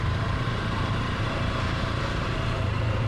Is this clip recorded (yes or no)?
no